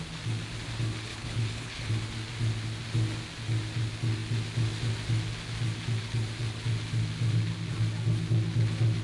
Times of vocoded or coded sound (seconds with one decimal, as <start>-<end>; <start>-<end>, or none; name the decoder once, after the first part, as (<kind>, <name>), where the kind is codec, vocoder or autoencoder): 1.1-1.9 (codec, HILCodec)